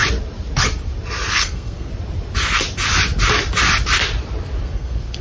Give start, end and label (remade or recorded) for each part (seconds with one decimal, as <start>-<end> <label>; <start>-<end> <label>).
0.0-1.3 recorded; 1.3-1.9 remade; 1.9-4.6 recorded; 4.6-5.2 remade